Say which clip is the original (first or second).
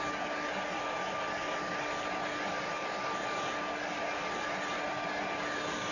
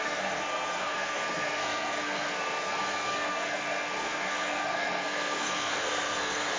first